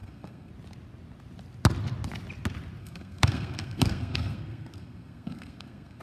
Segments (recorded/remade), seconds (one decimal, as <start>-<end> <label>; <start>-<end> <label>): 0.0-0.5 remade; 0.5-2.8 recorded; 2.8-6.0 remade